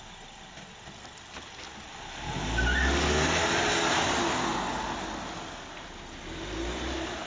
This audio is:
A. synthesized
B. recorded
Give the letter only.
B